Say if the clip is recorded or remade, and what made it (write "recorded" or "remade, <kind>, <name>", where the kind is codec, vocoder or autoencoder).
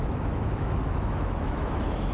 remade, autoencoder, DAC-VAE